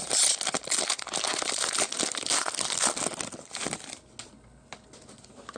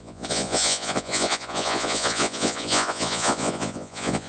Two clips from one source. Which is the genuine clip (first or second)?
first